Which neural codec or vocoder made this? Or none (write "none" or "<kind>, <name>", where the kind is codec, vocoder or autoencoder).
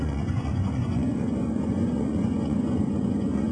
vocoder, Vocos